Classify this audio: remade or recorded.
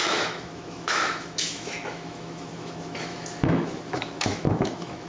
remade